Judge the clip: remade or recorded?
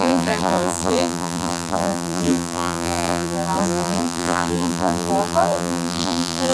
remade